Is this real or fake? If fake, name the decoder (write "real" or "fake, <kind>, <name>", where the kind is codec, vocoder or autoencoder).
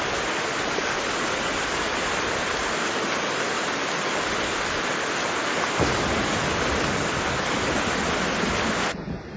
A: real